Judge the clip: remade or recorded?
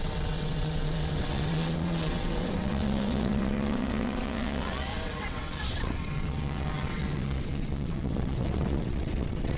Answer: remade